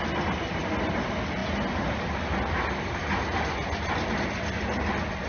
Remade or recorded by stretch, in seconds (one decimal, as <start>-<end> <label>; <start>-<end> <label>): 0.0-5.3 recorded